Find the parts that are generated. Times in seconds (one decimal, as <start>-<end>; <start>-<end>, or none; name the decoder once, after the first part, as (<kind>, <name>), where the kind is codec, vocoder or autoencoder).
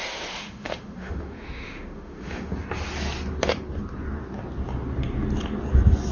0.0-2.5 (autoencoder, DAC-VAE)